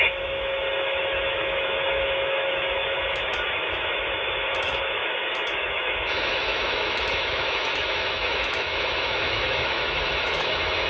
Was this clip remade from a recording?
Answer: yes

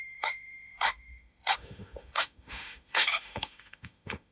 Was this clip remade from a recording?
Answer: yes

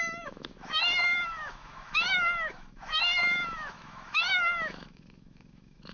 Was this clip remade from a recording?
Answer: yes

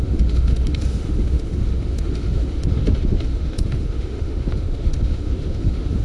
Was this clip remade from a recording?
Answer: yes